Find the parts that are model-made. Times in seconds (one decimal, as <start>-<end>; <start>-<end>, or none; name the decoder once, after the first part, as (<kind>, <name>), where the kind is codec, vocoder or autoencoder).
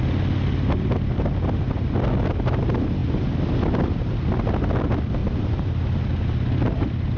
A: 5.2-5.7 (vocoder, BigVGAN v2)